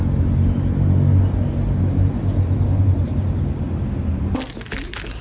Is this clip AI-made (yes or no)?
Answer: no